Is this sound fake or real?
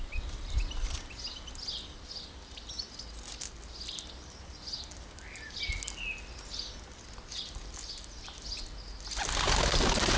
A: real